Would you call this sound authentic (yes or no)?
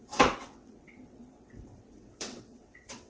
no